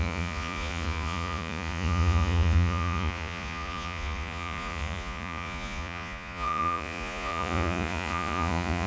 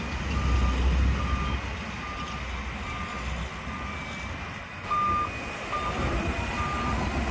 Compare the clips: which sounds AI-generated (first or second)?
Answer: first